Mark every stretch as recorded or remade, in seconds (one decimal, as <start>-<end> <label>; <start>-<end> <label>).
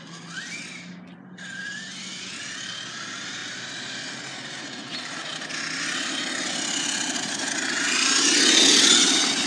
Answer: 0.0-9.5 recorded